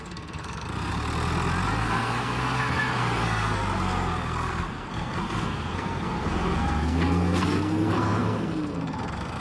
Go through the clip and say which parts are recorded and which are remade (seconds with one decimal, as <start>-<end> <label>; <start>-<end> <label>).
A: 0.0-0.9 remade; 0.9-1.8 recorded; 1.8-9.4 remade